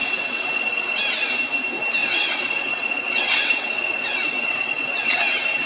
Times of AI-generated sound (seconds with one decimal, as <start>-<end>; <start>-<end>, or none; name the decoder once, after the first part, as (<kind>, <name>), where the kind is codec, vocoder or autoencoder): 0.0-1.0 (vocoder, WaveNeXt); 2.0-5.7